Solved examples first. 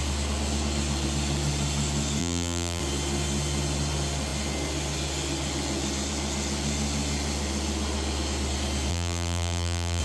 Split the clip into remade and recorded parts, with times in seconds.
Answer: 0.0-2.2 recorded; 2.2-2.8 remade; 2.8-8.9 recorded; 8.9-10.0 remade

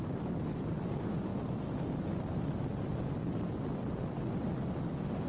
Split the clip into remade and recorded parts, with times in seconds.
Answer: 0.0-5.3 remade

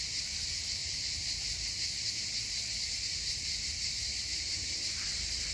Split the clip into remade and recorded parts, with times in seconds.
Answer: 0.0-5.5 remade

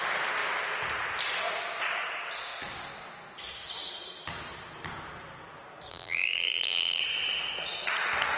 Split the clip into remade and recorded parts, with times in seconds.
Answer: 0.0-5.9 recorded; 5.9-7.0 remade; 7.0-8.4 recorded

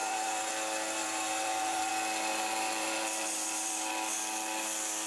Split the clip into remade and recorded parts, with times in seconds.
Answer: 0.0-0.5 remade; 0.5-1.0 recorded; 1.0-1.9 remade; 1.9-2.3 recorded; 2.3-3.9 remade; 3.9-5.1 recorded

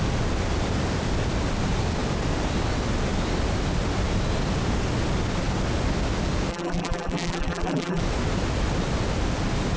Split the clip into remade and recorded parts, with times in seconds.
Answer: 0.0-6.5 recorded; 6.5-8.0 remade; 8.0-9.8 recorded